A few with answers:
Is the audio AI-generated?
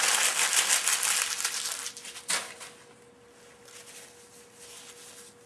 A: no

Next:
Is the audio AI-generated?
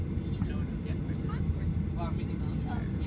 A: no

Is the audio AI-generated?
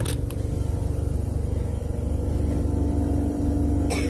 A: no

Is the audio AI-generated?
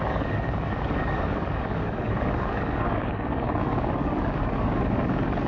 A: yes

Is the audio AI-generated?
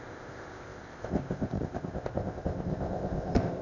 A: yes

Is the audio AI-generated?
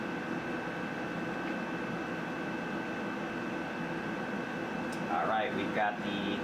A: no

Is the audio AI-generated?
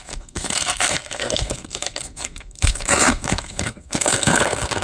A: yes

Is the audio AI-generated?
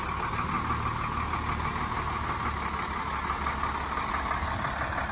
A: no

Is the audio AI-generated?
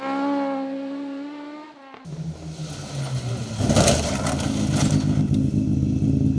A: no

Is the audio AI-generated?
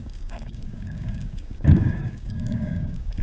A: yes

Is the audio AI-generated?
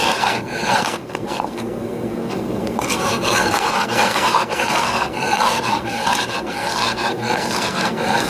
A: yes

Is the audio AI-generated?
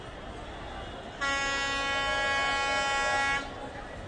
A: no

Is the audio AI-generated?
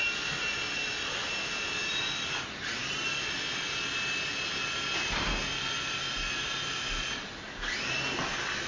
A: no